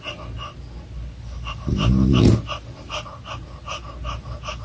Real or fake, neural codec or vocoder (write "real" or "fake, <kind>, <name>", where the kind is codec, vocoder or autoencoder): real